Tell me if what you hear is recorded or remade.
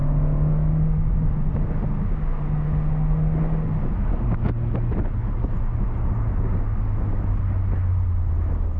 recorded